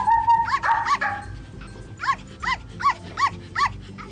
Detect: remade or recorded recorded